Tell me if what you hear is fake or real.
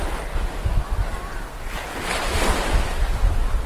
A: real